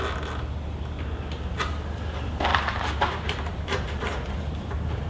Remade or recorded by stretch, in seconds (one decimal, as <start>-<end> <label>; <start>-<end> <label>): 0.0-2.5 recorded; 2.5-5.1 remade